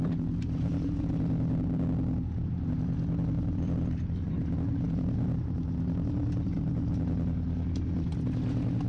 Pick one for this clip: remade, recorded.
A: recorded